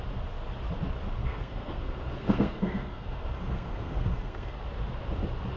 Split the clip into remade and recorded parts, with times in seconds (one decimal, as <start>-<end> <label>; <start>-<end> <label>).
0.0-1.2 recorded; 1.2-4.6 remade; 4.6-5.6 recorded